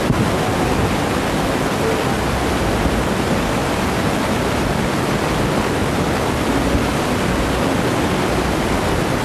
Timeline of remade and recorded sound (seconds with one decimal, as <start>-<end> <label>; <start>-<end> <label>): 0.0-9.2 recorded

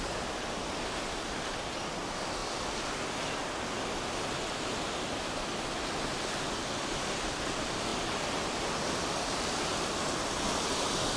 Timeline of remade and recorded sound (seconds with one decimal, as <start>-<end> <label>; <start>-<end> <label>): 0.0-11.2 recorded

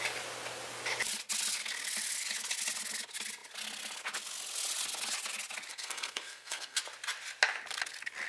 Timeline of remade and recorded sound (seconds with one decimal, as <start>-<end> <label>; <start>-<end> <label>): 0.0-5.7 recorded; 5.7-6.8 remade; 6.8-8.3 recorded

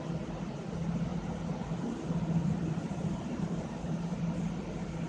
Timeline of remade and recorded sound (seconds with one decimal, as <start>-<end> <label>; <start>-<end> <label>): 0.0-1.1 recorded; 1.1-4.2 remade; 4.2-5.1 recorded

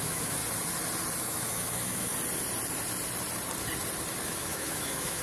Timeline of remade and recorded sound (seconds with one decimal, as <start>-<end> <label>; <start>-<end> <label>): 0.0-0.4 remade; 0.4-1.2 recorded; 1.2-2.1 remade; 2.1-4.3 recorded; 4.3-5.2 remade

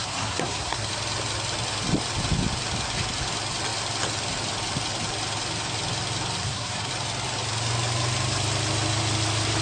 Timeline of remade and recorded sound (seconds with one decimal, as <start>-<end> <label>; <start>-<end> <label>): 0.0-0.9 remade; 0.9-6.4 recorded; 6.4-6.9 remade; 6.9-9.6 recorded